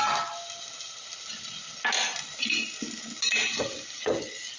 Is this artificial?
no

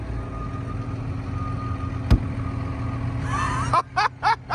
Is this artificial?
no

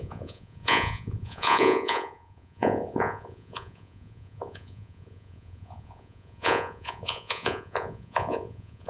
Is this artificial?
yes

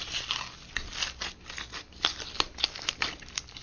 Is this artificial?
no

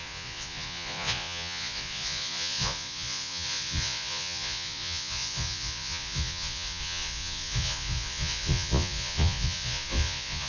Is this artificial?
yes